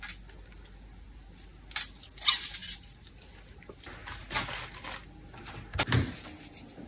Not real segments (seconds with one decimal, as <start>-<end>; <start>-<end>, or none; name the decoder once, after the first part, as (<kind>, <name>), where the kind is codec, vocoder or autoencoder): 2.6-3.1 (vocoder, BigVGAN v2)

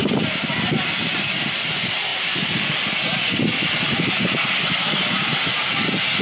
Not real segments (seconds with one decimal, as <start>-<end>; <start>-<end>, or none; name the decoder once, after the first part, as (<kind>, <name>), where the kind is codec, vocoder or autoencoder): 2.1-5.4 (vocoder, BigVGAN v2)